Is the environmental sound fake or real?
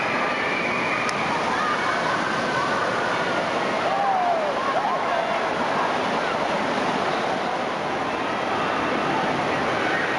real